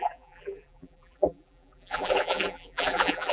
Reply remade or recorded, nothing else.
remade